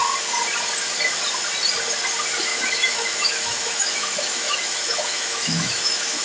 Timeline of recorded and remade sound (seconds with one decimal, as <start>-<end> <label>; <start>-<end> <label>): 0.0-2.5 recorded; 2.5-6.2 remade